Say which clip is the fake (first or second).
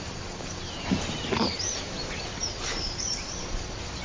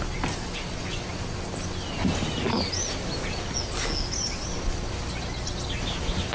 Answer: first